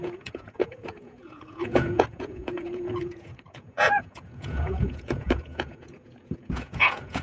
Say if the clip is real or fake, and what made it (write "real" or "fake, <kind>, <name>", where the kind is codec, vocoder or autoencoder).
fake, vocoder, Vocos